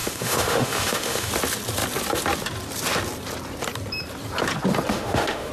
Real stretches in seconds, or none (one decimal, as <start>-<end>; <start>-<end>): 1.3-4.9